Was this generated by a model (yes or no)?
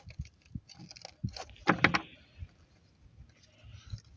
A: no